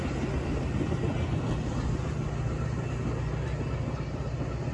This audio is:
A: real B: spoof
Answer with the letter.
A